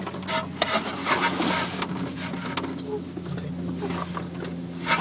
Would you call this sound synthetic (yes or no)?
no